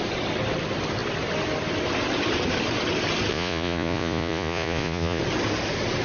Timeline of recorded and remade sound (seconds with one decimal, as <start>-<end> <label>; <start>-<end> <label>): 0.0-3.3 recorded; 3.3-5.2 remade; 5.2-6.0 recorded